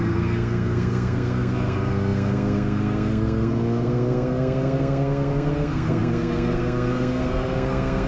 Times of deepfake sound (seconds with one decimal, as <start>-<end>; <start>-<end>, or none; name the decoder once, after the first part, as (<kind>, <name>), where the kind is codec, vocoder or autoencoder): 0.0-8.1 (codec, SNAC)